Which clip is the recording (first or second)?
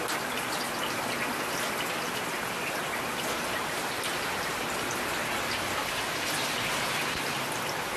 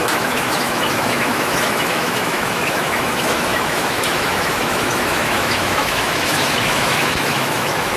first